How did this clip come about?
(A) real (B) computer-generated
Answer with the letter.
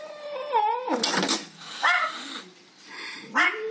A